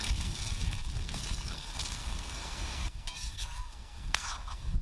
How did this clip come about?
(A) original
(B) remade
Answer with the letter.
B